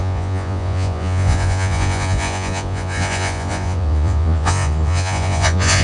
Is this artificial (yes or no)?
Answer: yes